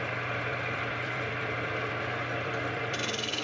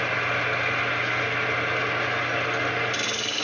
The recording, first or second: second